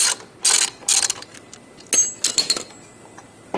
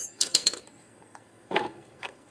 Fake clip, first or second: second